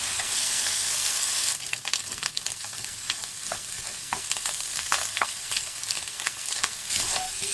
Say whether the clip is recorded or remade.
remade